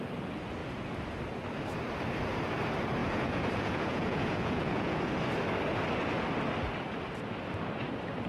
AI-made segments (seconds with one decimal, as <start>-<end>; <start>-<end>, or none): 3.0-5.0